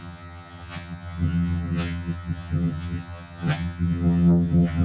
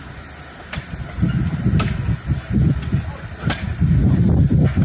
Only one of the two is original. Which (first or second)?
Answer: second